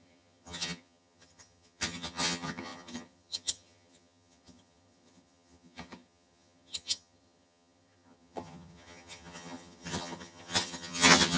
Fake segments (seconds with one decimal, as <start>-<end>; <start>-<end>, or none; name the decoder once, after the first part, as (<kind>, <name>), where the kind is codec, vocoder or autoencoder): 0.0-11.4 (vocoder, HiFi-GAN)